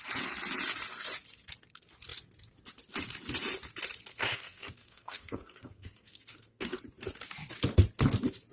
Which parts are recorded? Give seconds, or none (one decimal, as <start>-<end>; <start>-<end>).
0.0-4.1; 6.8-8.5